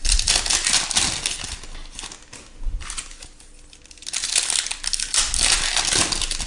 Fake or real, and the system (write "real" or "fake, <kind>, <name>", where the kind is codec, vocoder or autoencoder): real